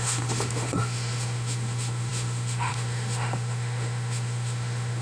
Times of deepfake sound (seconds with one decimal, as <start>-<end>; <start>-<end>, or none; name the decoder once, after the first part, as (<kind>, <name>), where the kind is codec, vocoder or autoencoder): 0.0-5.0 (autoencoder, DAC-VAE)